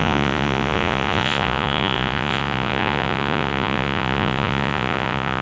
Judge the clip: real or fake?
fake